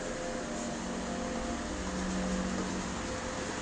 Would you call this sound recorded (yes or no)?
yes